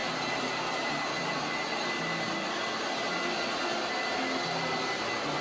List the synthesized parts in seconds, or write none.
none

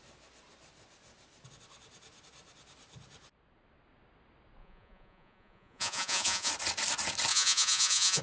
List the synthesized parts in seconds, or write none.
4.6-6.5 (vocoder, Vocos); 7.3-8.2

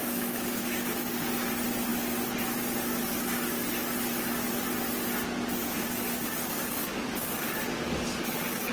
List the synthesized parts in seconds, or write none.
0.0-1.3 (codec, DAC); 5.5-8.7

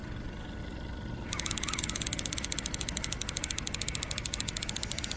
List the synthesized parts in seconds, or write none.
none

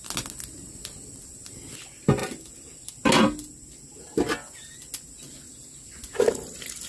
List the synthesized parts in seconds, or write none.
none

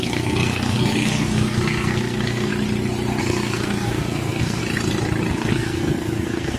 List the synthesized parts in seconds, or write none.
0.0-2.5 (codec, SNAC); 3.2-4.6; 5.3-6.6

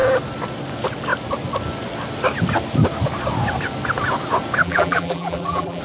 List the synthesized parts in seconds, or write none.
4.6-5.8 (vocoder, BigVGAN v2)

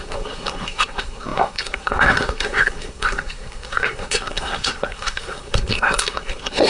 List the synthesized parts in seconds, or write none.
0.0-6.7 (codec, SNAC)